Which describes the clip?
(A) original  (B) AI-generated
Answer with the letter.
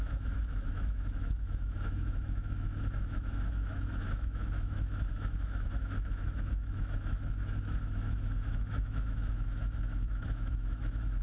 B